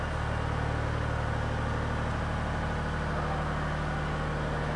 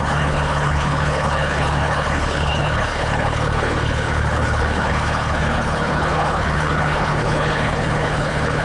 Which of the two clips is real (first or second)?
first